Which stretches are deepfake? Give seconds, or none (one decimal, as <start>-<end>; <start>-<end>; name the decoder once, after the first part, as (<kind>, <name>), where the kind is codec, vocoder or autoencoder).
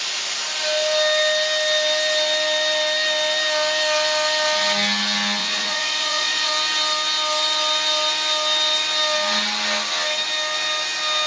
5.4-6.5 (vocoder, Vocos)